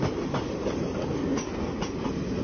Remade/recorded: recorded